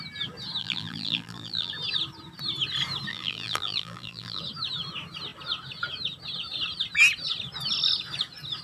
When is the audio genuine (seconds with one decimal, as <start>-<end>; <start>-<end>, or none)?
0.0-0.6; 1.7-3.1; 4.4-8.6